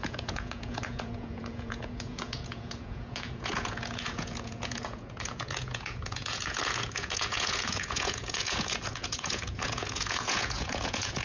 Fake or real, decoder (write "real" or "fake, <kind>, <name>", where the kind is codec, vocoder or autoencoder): fake, vocoder, Vocos